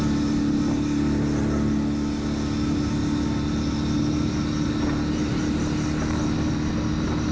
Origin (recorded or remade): recorded